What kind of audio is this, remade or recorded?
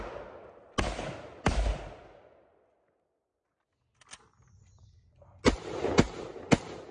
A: recorded